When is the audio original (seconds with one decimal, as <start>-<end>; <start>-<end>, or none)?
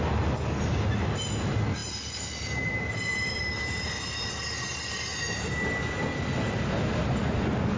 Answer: 0.0-1.8; 3.4-7.8